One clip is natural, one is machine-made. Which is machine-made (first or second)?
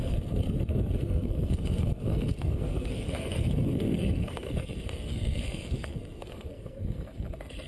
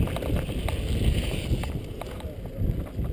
first